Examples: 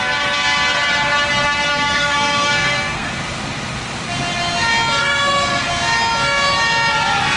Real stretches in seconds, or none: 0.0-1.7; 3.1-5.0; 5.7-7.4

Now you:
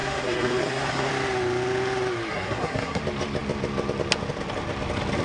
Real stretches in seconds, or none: 1.1-2.3; 3.0-5.2

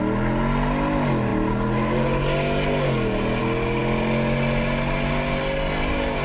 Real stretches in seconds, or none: 0.0-6.2

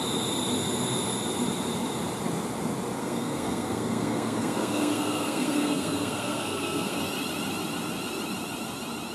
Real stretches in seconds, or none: 0.0-3.0; 7.0-9.1

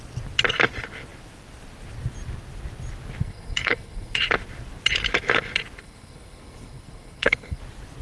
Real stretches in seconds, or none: 0.0-3.2; 4.2-5.8; 7.6-8.0

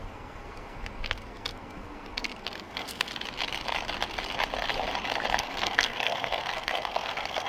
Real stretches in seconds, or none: 3.1-5.4

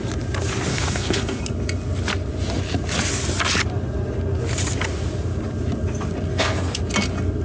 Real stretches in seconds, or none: 0.0-0.7; 1.4-6.3; 6.8-7.4